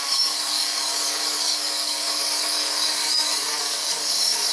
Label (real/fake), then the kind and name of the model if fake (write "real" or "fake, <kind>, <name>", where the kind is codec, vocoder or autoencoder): fake, codec, DAC